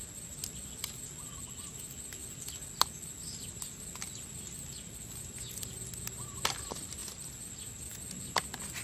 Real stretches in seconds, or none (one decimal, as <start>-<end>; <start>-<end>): 0.0-8.8